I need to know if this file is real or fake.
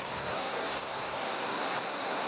fake